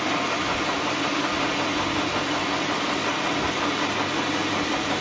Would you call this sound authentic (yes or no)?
yes